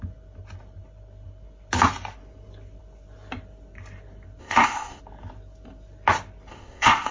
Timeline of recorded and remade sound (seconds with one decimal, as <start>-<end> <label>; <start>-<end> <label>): 0.0-4.4 recorded; 4.4-5.0 remade; 5.0-6.5 recorded; 6.5-7.1 remade